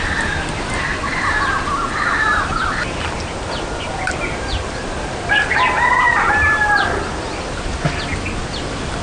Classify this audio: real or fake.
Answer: real